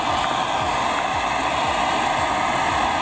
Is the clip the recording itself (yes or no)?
yes